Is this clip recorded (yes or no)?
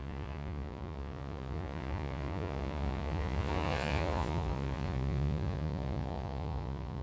no